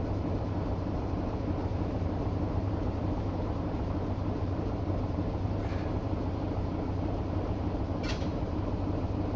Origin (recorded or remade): remade